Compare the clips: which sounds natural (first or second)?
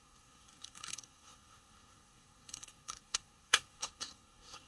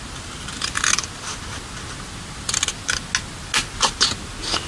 second